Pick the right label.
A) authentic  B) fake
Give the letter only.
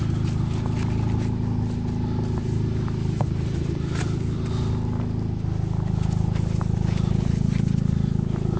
A